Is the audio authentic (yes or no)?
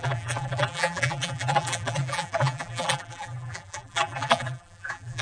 no